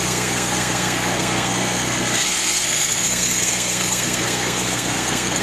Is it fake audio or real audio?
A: fake